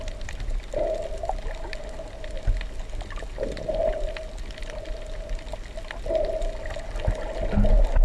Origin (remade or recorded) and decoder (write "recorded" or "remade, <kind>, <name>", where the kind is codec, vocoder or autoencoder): recorded